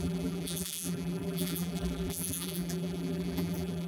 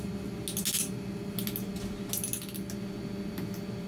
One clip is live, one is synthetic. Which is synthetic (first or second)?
first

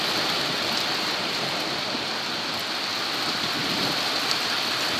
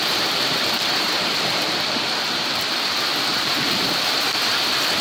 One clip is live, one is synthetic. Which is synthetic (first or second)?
second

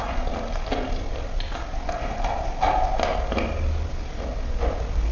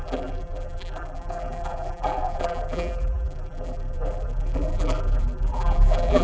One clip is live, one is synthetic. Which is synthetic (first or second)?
second